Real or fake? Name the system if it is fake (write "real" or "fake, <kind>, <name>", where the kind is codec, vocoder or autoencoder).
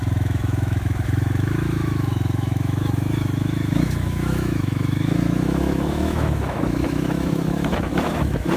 fake, autoencoder, DAC-VAE